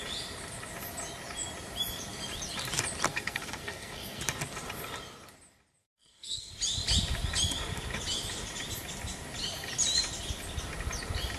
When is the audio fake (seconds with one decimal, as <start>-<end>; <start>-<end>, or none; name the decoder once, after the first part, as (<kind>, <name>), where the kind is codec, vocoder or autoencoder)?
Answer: 3.1-4.2 (codec, SNAC); 5.8-6.5